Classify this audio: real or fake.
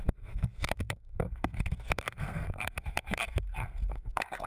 fake